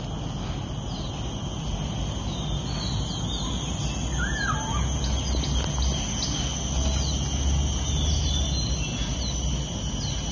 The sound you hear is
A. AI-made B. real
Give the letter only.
B